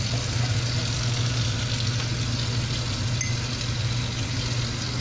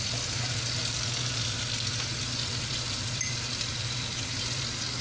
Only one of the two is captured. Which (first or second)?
first